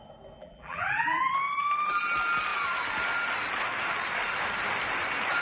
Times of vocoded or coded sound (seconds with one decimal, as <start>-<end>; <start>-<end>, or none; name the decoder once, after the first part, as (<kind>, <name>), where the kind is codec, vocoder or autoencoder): 0.4-1.3 (vocoder, BigVGAN v2)